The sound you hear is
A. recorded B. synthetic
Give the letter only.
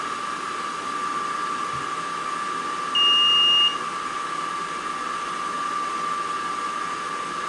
A